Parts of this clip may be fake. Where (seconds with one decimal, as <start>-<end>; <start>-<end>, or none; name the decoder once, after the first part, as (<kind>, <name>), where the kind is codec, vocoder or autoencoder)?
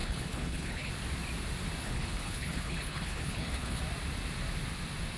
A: 0.0-0.9 (codec, HILCodec); 1.8-3.8